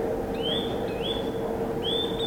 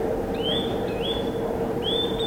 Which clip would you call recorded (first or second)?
first